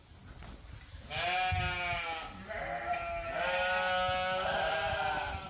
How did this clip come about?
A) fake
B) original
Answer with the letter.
B